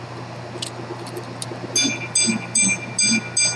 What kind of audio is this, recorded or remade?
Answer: recorded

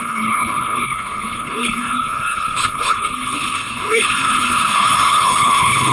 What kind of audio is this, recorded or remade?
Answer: remade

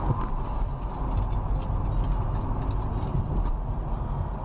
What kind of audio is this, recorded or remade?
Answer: recorded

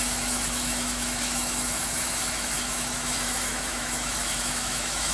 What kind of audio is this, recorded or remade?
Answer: remade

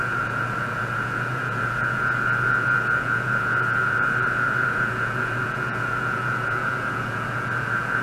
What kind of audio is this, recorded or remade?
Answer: remade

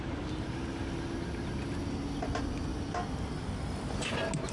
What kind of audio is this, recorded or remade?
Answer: recorded